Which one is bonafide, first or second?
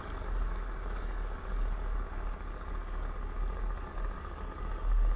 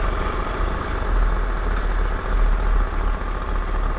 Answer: second